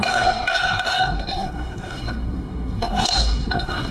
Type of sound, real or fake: fake